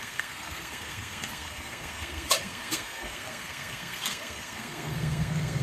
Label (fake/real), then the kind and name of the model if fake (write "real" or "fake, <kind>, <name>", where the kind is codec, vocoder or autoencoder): fake, codec, SNAC